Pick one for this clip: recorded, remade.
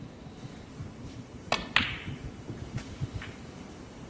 remade